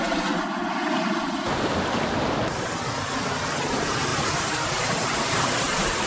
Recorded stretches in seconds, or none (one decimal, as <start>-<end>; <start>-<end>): 0.0-0.6; 1.4-4.1